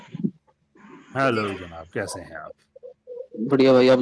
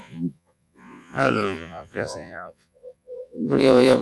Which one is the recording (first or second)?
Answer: first